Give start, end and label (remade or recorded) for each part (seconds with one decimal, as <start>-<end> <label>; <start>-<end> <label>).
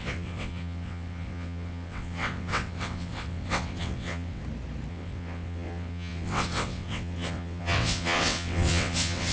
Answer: 0.0-4.4 remade; 4.4-4.9 recorded; 4.9-9.3 remade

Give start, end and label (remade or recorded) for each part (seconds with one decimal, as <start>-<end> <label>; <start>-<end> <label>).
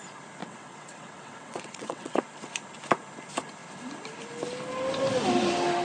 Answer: 0.0-0.4 recorded; 0.4-2.2 remade; 2.2-5.8 recorded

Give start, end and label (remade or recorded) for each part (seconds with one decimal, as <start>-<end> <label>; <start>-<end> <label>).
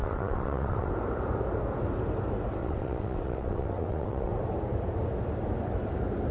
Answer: 0.0-0.9 remade; 0.9-2.6 recorded; 2.6-4.3 remade; 4.3-6.3 recorded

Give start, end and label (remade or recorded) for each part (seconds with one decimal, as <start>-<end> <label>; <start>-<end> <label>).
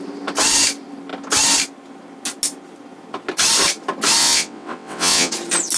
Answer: 0.0-4.2 recorded; 4.2-5.3 remade; 5.3-5.8 recorded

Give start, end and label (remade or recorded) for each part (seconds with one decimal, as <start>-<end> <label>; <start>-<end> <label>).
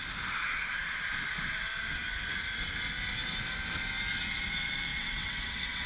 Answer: 0.0-4.9 recorded; 4.9-5.9 remade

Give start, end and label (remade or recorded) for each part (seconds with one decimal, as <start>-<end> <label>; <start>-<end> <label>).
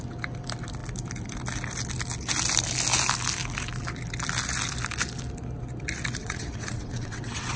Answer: 0.0-6.2 recorded; 6.2-7.6 remade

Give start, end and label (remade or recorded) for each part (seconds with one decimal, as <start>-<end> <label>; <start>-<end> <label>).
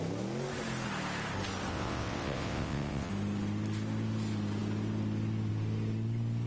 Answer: 0.0-1.7 recorded; 1.7-3.1 remade; 3.1-6.5 recorded